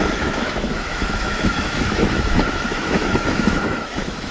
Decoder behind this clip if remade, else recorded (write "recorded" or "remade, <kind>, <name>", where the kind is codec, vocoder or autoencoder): remade, autoencoder, DAC-VAE